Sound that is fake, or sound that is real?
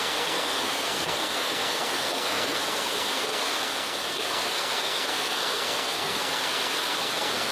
fake